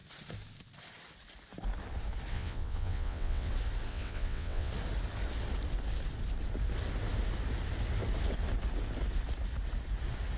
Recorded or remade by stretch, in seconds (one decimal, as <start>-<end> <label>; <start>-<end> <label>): 0.0-2.3 recorded; 2.3-3.5 remade; 3.5-3.9 recorded; 3.9-4.7 remade; 4.7-10.4 recorded